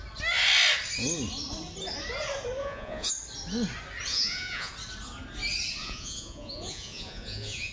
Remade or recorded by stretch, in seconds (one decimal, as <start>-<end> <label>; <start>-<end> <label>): 0.0-2.6 recorded; 2.6-3.1 remade; 3.1-4.1 recorded; 4.1-4.7 remade; 4.7-5.8 recorded; 5.8-7.7 remade